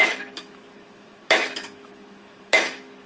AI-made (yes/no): yes